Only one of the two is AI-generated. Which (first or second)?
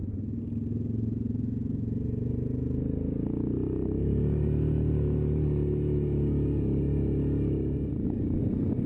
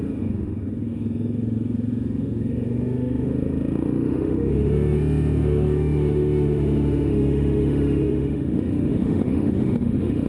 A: second